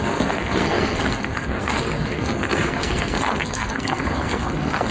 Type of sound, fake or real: fake